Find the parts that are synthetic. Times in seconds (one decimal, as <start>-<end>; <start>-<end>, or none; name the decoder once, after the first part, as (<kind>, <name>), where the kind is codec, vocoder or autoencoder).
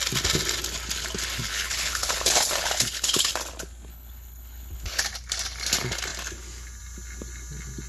1.5-3.3 (codec, HILCodec); 3.9-5.0